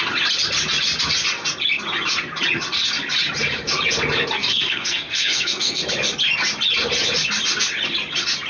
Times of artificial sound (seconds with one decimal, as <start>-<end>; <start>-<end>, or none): 4.4-5.8